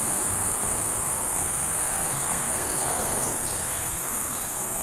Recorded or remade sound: remade